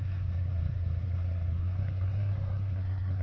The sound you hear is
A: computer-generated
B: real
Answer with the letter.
A